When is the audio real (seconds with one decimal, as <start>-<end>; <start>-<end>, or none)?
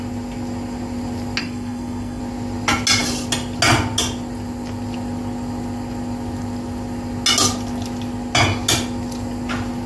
0.0-1.4; 2.2-9.9